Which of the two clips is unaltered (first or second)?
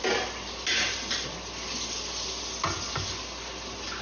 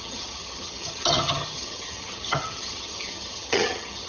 first